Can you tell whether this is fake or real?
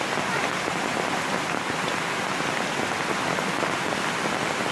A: real